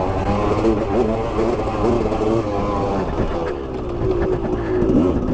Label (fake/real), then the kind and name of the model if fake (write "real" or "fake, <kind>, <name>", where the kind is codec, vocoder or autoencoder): real